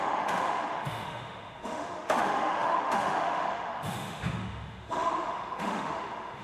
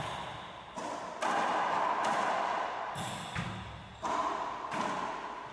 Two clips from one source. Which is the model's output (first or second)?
first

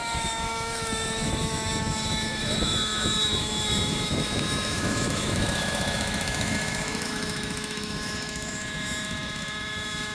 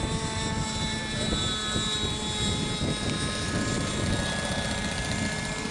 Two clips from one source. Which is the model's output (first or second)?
first